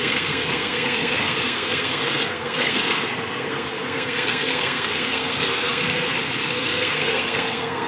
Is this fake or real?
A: fake